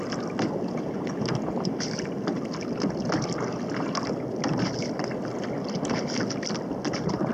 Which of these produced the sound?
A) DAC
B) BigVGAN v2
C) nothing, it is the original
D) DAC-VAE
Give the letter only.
C